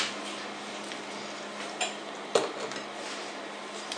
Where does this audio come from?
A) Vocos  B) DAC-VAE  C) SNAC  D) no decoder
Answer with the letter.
D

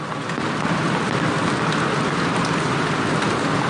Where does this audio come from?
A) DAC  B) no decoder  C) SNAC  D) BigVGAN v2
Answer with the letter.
B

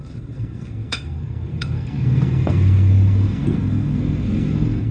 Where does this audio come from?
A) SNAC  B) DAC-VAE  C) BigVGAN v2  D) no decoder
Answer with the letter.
A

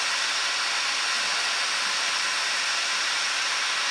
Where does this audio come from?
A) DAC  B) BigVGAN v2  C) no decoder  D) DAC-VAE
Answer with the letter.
C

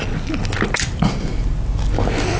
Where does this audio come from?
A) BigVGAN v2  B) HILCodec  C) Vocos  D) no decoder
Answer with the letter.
D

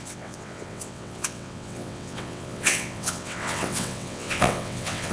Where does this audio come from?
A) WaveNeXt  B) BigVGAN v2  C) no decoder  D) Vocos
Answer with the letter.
A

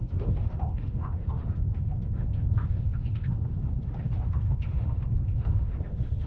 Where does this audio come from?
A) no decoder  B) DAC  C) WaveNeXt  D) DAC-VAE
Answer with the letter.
D